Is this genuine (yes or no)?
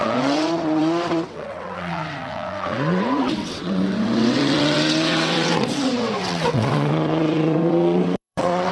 no